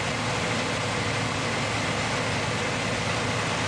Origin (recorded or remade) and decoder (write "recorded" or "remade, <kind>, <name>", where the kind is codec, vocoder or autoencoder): recorded